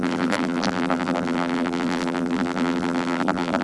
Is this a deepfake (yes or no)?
yes